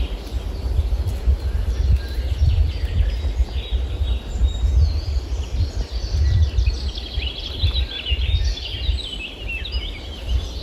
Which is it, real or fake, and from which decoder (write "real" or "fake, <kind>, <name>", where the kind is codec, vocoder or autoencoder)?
real